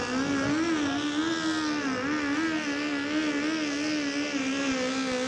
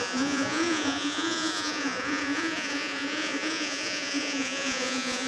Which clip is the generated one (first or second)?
second